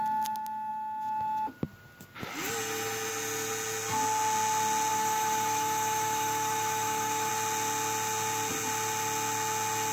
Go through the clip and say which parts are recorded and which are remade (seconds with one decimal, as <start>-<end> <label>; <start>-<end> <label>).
0.0-4.9 recorded; 4.9-7.3 remade; 7.3-9.9 recorded